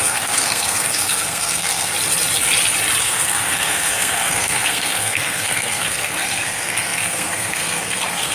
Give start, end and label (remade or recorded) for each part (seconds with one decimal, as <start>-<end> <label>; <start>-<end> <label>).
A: 0.0-1.9 remade; 1.9-3.0 recorded; 3.0-8.3 remade